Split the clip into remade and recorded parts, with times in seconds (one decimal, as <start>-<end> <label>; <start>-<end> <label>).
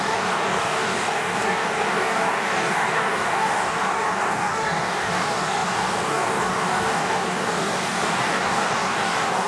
0.0-9.5 remade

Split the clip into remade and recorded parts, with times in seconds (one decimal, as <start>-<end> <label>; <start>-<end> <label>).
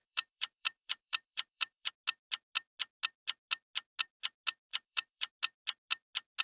0.0-1.9 remade; 1.9-4.7 recorded; 4.7-5.3 remade; 5.3-6.4 recorded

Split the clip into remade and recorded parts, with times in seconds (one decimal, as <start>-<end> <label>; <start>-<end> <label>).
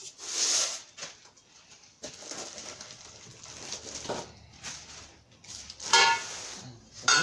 0.0-1.5 recorded; 1.5-3.3 remade; 3.3-6.8 recorded; 6.8-7.2 remade